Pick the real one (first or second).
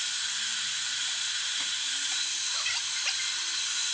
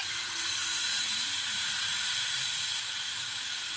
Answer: first